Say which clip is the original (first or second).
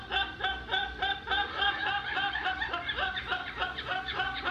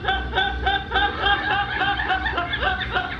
second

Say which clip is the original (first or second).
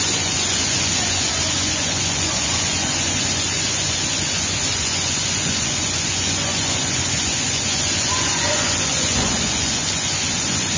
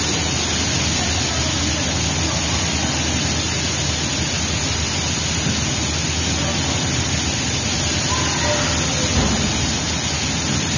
second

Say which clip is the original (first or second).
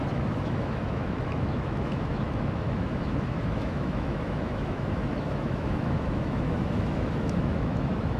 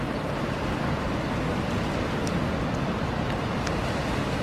second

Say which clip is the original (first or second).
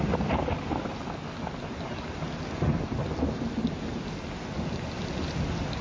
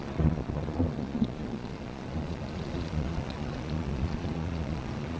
first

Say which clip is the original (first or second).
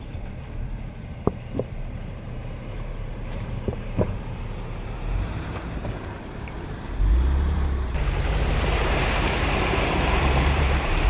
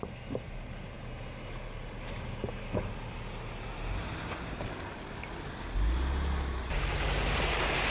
second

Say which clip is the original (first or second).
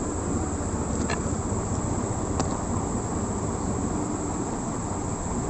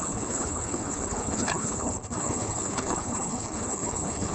first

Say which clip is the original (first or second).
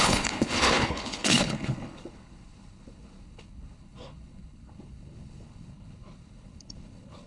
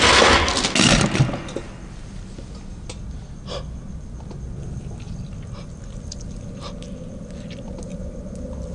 second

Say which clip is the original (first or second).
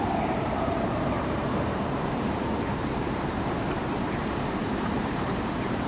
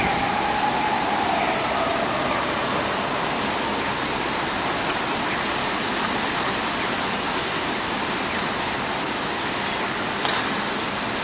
second